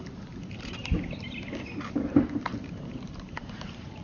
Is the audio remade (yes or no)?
yes